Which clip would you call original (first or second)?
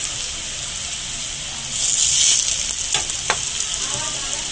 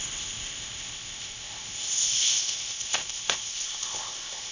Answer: first